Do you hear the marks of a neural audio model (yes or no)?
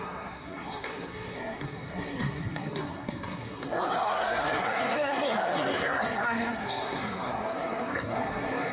yes